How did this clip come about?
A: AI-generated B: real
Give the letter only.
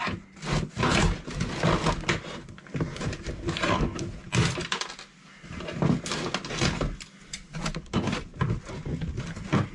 B